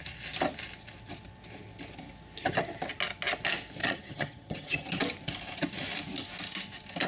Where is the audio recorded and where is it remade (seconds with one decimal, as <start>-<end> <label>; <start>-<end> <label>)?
0.0-3.8 recorded; 3.8-4.9 remade; 4.9-7.1 recorded